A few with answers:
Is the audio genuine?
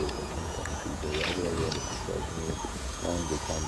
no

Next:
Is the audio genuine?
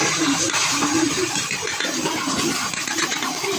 no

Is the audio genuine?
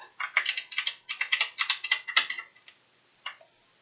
no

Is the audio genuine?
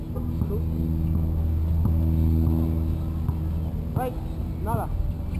yes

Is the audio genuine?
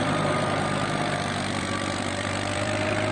no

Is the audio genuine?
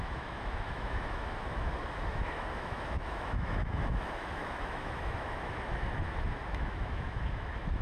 no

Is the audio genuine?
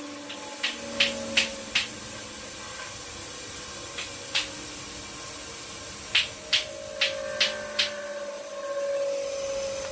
yes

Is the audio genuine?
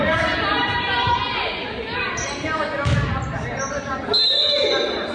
yes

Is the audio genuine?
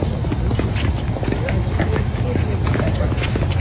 yes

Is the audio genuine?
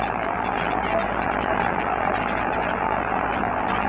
no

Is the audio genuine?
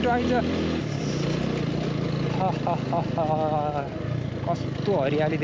yes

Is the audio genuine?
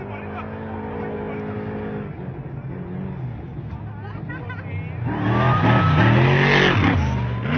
yes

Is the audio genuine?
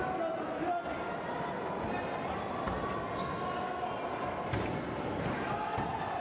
yes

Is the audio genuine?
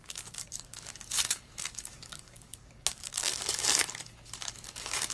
no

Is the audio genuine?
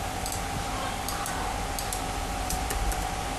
yes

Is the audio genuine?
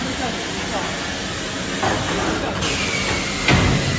yes